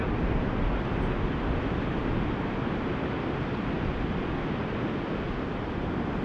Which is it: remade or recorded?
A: recorded